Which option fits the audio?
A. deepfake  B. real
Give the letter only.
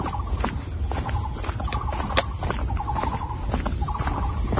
B